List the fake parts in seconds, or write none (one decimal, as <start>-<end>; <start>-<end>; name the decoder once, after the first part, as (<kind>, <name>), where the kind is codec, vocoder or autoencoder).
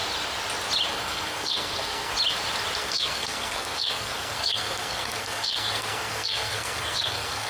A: 0.9-2.1 (codec, SNAC); 2.8-7.5